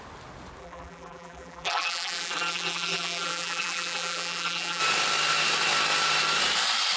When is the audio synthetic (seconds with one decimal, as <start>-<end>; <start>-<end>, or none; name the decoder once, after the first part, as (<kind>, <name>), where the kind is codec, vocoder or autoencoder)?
0.6-4.8 (vocoder, BigVGAN v2)